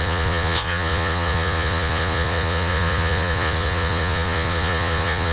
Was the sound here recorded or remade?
remade